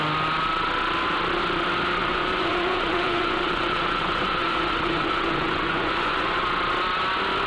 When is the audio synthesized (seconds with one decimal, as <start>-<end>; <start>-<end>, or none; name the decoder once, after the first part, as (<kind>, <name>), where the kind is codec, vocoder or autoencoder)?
2.0-6.4 (vocoder, Vocos)